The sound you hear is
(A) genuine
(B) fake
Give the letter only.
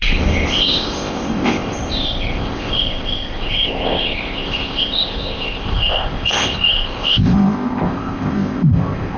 B